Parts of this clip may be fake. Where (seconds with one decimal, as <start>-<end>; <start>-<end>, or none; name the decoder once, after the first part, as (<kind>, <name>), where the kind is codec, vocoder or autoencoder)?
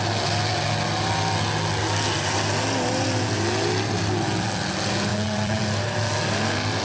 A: 5.1-5.6 (vocoder, BigVGAN v2)